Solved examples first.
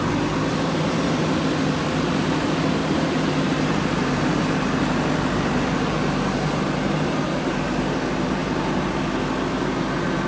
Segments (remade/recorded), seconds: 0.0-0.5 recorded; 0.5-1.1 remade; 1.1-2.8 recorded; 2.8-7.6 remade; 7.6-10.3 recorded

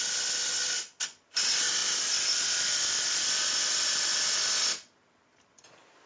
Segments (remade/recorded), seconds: 0.0-6.1 recorded

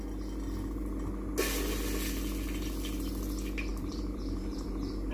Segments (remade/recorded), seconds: 0.0-3.7 recorded; 3.7-5.1 remade

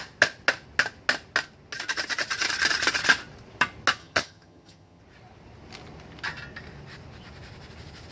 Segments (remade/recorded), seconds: 0.0-4.0 recorded; 4.0-5.0 remade; 5.0-8.1 recorded

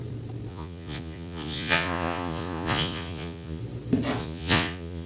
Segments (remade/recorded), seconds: 0.0-0.5 recorded; 0.5-3.6 remade; 3.6-4.2 recorded; 4.2-5.1 remade

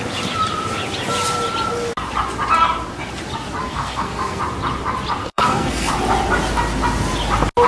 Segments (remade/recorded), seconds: 0.0-3.6 recorded; 3.6-4.4 remade; 4.4-5.2 recorded; 5.2-5.9 remade; 5.9-7.7 recorded